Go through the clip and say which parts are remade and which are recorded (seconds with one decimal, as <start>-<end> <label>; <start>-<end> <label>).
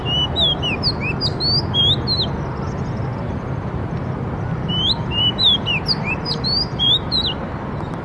0.0-3.1 recorded; 3.1-8.0 remade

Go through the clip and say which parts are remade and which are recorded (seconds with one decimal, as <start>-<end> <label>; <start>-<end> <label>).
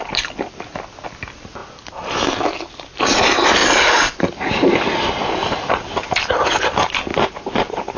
0.0-3.6 recorded; 3.6-4.2 remade; 4.2-5.4 recorded; 5.4-6.4 remade; 6.4-7.1 recorded; 7.1-8.0 remade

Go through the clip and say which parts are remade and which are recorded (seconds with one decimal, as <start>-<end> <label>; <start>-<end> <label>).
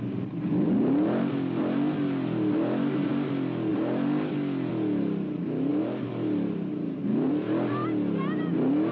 0.0-5.7 recorded; 5.7-7.3 remade; 7.3-8.9 recorded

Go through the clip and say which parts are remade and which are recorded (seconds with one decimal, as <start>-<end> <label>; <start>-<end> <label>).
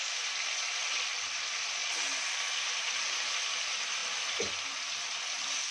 0.0-0.8 recorded; 0.8-1.4 remade; 1.4-1.8 recorded; 1.8-3.4 remade; 3.4-4.0 recorded; 4.0-4.5 remade; 4.5-5.7 recorded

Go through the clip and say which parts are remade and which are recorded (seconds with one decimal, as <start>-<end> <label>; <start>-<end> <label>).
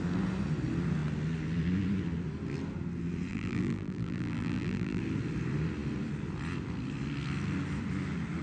0.0-3.3 recorded; 3.3-5.0 remade; 5.0-8.4 recorded